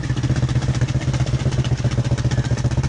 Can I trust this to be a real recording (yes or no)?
yes